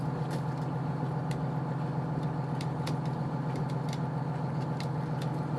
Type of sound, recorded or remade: recorded